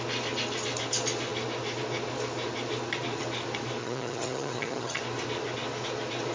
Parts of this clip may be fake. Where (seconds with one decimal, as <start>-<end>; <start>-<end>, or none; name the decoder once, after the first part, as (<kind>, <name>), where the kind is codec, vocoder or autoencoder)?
3.8-5.0 (vocoder, HiFi-GAN)